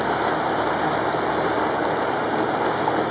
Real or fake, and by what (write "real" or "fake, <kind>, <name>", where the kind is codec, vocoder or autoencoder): real